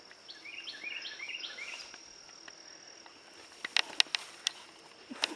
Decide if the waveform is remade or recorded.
recorded